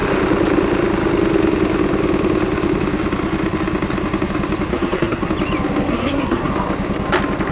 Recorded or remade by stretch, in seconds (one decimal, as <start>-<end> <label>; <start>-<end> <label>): 0.0-4.7 recorded; 4.7-5.3 remade; 5.3-5.9 recorded; 5.9-6.5 remade; 6.5-7.5 recorded